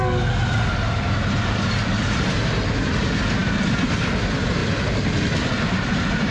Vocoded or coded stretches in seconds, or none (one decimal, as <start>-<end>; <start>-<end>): none